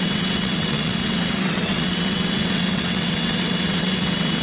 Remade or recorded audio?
remade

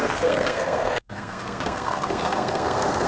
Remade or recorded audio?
remade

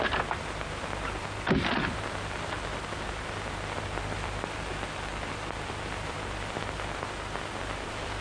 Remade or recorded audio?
recorded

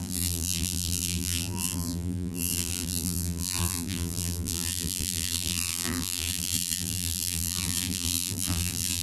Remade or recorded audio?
remade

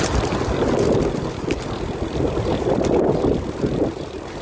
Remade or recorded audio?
recorded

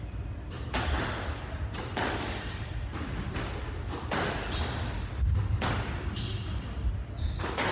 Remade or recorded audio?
recorded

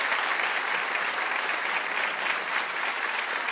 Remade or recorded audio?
remade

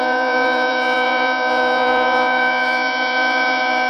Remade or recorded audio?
remade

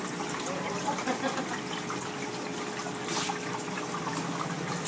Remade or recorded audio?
recorded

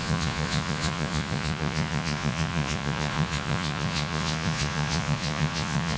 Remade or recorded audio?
remade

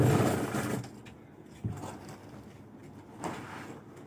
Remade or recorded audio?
recorded